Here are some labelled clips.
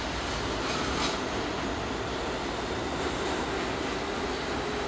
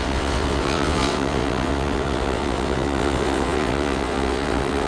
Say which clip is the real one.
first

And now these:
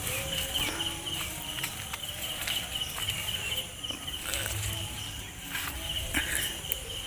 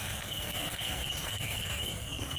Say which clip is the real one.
first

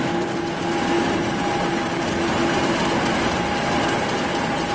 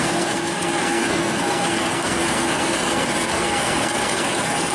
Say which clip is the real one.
first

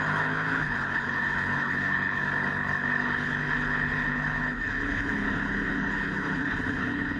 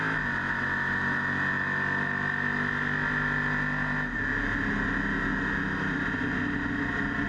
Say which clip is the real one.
second